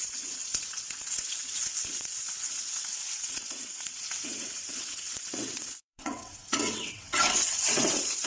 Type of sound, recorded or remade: remade